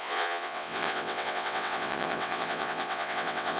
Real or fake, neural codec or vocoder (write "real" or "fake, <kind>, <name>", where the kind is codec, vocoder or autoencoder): fake, vocoder, WaveNeXt